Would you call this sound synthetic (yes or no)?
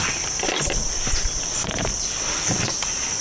yes